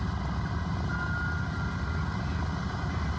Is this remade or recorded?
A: recorded